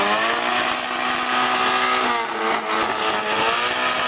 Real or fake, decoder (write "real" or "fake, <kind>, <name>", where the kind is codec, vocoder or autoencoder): real